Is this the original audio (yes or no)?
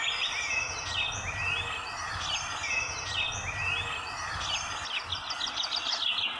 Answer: yes